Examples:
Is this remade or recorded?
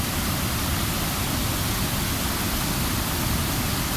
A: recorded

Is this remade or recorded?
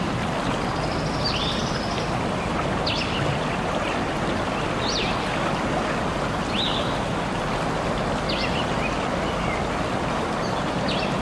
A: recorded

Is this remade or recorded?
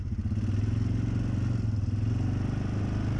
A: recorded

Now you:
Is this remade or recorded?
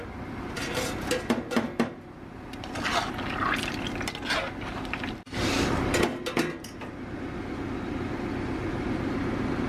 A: recorded